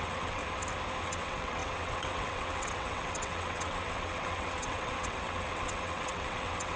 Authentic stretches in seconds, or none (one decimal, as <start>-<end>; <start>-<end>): 0.4-1.0